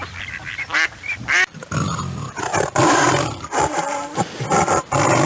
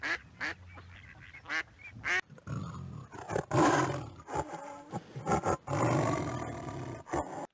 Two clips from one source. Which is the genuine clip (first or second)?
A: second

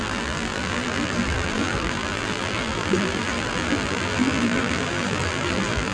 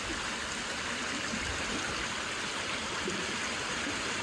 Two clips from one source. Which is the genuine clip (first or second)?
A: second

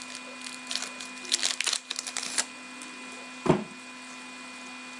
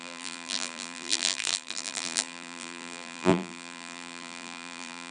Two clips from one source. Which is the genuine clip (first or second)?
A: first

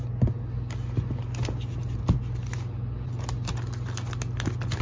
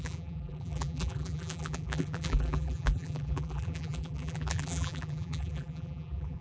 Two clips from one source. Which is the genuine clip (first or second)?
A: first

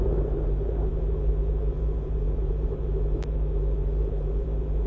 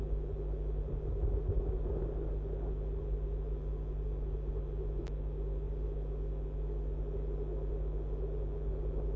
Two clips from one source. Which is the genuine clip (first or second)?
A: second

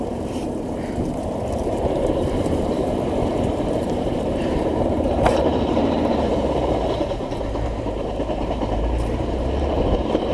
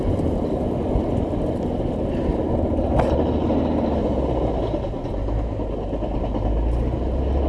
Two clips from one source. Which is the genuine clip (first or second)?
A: second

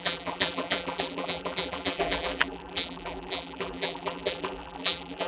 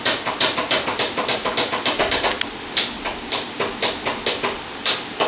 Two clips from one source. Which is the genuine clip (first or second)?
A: second